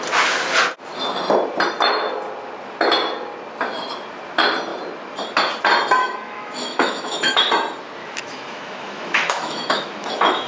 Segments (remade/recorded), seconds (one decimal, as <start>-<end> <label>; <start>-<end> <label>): 0.0-6.0 recorded; 6.0-7.5 remade; 7.5-8.0 recorded; 8.0-10.5 remade